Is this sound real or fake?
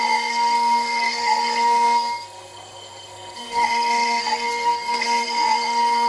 fake